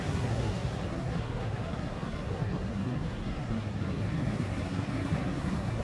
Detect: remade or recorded remade